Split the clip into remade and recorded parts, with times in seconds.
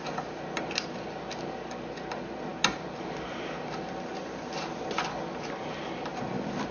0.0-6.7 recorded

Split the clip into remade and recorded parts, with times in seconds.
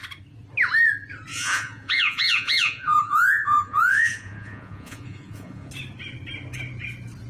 0.0-1.3 recorded; 1.3-5.7 remade; 5.7-7.3 recorded